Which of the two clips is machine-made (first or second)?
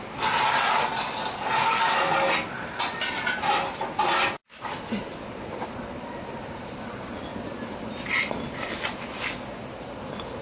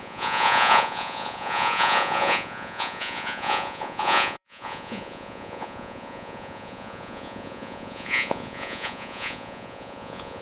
second